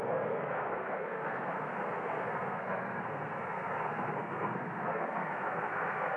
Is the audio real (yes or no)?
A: no